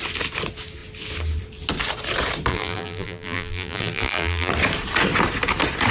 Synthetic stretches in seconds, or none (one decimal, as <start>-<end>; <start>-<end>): 2.5-4.5